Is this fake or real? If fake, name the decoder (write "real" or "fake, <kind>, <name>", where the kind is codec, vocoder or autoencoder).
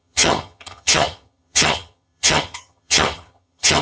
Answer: fake, vocoder, HiFi-GAN